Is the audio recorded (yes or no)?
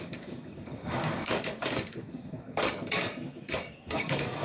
no